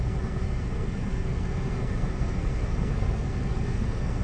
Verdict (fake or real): fake